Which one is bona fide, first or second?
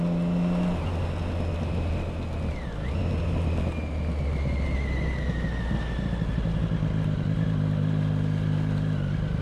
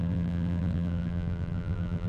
first